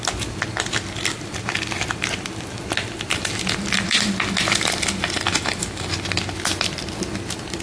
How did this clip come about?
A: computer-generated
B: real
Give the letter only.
B